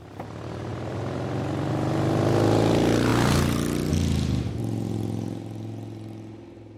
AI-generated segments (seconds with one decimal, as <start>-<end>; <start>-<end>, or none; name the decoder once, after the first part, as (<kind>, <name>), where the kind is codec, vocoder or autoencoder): none